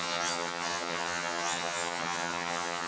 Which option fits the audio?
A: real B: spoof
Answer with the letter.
B